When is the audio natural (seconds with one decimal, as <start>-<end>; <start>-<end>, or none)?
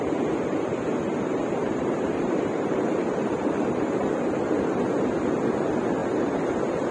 0.0-1.6; 4.8-6.0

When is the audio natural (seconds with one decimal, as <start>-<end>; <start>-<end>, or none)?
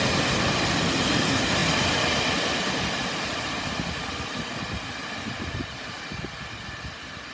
0.0-7.3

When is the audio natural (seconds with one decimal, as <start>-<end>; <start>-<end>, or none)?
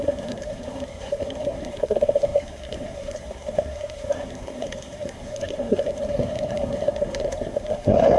none